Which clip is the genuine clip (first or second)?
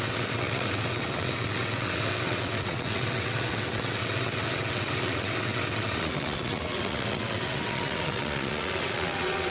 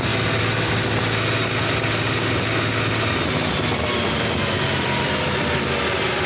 second